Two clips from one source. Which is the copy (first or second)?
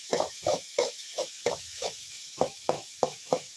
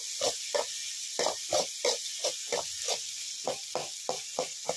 first